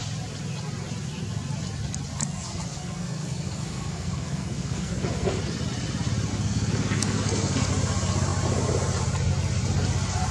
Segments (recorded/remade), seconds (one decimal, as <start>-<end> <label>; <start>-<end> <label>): 0.0-2.7 recorded; 2.7-5.4 remade; 5.4-6.3 recorded; 6.3-7.7 remade; 7.7-10.3 recorded